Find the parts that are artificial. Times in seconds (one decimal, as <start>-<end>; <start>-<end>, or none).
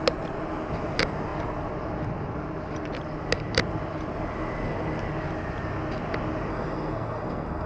6.5-7.7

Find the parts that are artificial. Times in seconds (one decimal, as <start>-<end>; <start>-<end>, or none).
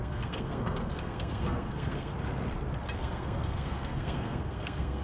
0.0-2.1; 3.0-5.0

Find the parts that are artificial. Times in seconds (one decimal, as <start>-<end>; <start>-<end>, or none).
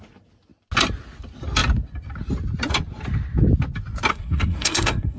4.1-5.2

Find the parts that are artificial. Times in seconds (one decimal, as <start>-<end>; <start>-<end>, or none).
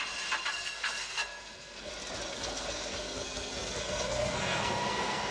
0.5-1.9; 2.3-5.3